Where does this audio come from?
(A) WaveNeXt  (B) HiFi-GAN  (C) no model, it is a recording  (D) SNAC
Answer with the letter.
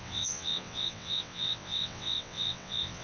A